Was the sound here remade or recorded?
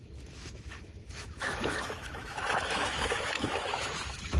remade